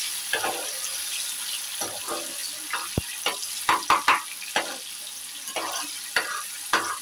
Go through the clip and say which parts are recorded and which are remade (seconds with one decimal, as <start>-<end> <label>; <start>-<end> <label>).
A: 0.0-7.0 recorded